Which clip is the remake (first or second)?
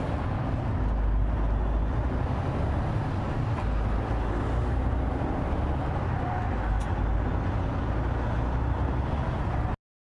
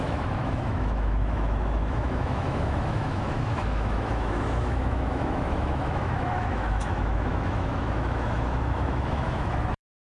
second